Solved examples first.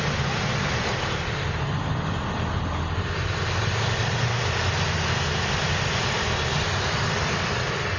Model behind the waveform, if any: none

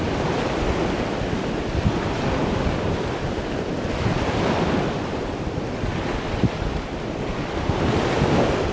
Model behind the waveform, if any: none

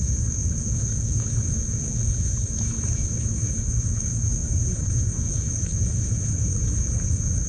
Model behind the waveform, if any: autoencoder, DAC-VAE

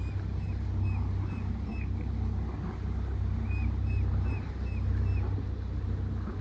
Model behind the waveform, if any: none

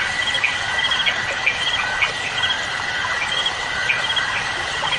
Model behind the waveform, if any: none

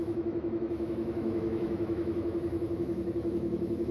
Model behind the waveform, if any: autoencoder, DAC-VAE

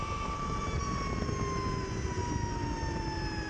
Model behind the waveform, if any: none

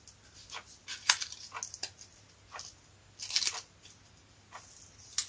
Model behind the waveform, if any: none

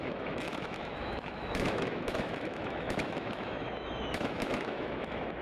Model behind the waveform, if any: autoencoder, DAC-VAE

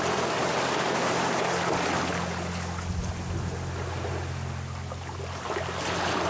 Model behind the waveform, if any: none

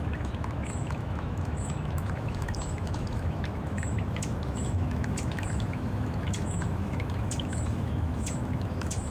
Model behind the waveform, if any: autoencoder, DAC-VAE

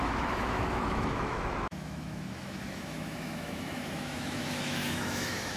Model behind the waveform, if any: autoencoder, DAC-VAE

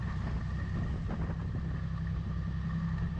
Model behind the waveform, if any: none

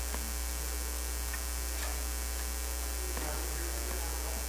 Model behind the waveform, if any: none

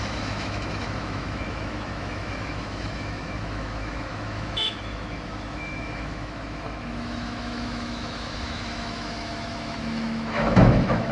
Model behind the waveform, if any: autoencoder, DAC-VAE